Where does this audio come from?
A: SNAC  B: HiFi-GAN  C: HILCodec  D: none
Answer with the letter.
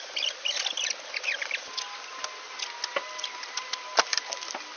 D